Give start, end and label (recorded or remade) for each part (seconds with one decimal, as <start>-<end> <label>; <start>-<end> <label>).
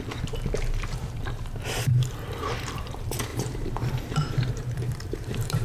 0.0-5.6 remade